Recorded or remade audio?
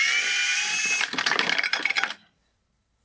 recorded